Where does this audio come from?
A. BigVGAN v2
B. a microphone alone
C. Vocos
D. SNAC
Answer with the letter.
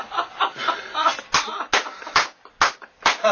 B